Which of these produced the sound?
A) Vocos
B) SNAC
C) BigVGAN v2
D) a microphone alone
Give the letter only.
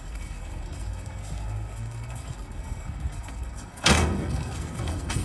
B